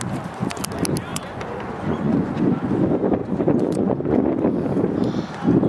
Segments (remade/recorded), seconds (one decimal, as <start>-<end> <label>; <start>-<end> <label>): 0.0-1.1 recorded; 1.1-2.4 remade; 2.4-3.2 recorded; 3.2-4.3 remade; 4.3-5.7 recorded